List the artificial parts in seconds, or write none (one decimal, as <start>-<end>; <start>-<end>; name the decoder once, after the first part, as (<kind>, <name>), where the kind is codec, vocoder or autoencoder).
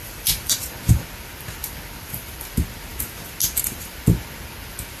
0.0-0.9 (vocoder, BigVGAN v2); 1.6-2.4